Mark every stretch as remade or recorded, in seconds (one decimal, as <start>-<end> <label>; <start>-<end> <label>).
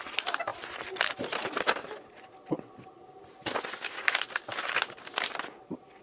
0.0-6.0 recorded